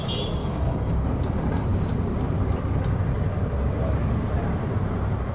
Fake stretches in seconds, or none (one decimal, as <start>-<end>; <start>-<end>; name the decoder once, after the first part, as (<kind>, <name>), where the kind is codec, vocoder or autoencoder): 0.4-1.1 (codec, DAC)